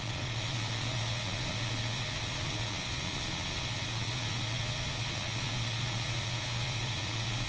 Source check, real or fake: fake